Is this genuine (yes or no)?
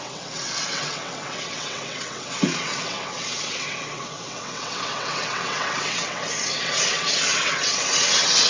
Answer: no